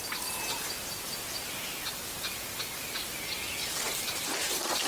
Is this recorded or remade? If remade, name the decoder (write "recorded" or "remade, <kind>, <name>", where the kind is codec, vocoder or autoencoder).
recorded